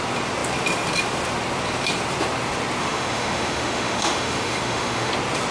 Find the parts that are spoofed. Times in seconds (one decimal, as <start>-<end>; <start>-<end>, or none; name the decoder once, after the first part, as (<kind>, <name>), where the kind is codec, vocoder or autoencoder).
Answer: 2.8-5.1 (autoencoder, DAC-VAE)